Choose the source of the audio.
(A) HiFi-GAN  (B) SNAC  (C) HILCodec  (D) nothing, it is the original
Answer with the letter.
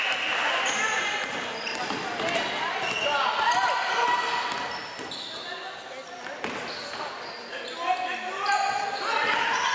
D